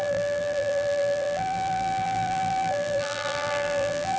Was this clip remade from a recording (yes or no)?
yes